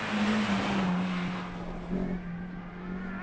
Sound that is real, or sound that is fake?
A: real